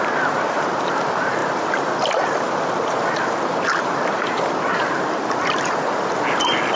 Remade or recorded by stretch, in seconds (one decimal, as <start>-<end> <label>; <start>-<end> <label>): 0.0-6.8 remade